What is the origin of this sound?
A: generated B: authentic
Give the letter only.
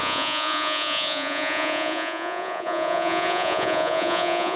A